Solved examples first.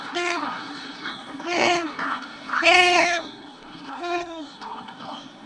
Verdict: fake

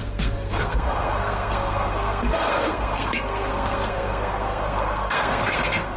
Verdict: fake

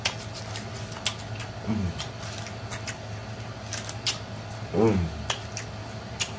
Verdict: real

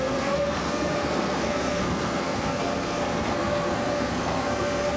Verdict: fake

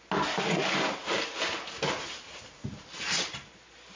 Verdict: real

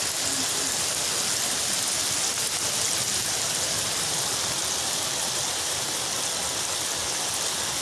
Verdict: real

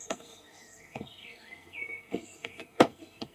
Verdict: fake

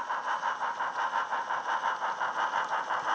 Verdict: real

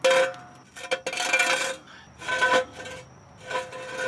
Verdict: real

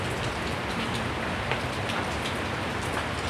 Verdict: real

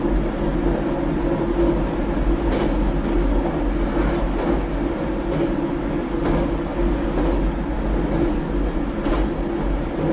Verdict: real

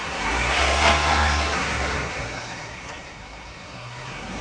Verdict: fake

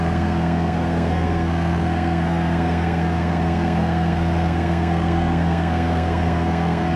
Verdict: fake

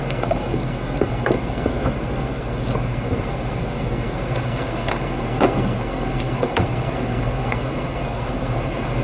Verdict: fake